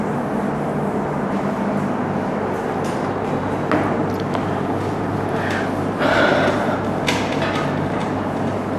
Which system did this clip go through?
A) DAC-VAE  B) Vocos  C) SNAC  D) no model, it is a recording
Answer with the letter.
D